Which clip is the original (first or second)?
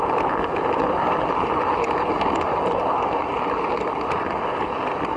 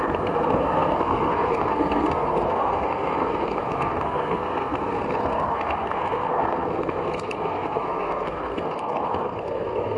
first